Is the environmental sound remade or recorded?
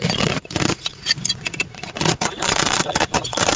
remade